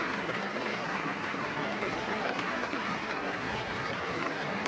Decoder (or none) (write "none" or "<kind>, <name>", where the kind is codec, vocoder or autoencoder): codec, SNAC